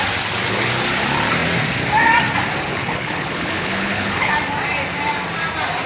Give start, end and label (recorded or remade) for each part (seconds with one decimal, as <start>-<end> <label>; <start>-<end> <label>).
0.0-2.7 recorded; 2.7-4.3 remade; 4.3-5.9 recorded